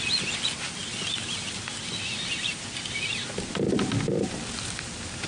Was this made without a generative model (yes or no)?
yes